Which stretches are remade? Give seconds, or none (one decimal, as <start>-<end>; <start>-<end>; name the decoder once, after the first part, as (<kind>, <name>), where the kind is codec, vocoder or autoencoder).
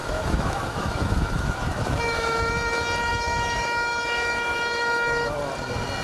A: 0.0-2.5 (autoencoder, DAC-VAE); 3.1-5.4